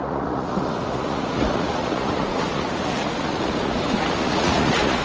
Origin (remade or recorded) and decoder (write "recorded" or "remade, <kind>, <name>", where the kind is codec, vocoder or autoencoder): remade, vocoder, Vocos